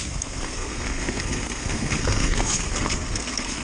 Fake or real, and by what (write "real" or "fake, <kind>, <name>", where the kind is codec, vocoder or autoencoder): fake, codec, SNAC